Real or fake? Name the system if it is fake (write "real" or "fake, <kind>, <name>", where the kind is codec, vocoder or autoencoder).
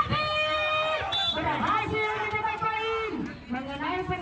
real